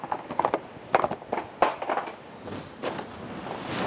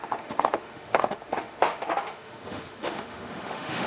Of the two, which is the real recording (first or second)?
first